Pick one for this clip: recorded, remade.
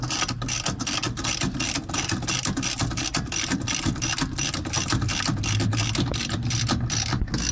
recorded